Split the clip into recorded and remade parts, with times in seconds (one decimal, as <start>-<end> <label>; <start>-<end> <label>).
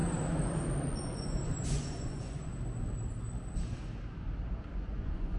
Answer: 0.0-0.9 recorded; 0.9-2.5 remade; 2.5-4.7 recorded; 4.7-5.4 remade